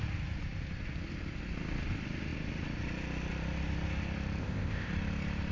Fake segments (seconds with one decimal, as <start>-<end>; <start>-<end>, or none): 4.4-4.9